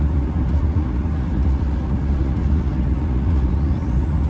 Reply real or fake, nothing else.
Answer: fake